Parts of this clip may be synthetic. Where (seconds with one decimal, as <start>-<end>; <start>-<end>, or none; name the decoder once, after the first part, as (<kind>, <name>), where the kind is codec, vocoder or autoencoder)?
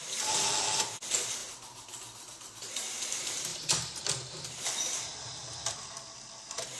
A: 3.5-4.0 (vocoder, BigVGAN v2)